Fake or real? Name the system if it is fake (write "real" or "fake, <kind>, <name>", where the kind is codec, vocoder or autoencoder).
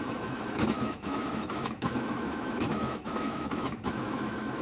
fake, autoencoder, DAC-VAE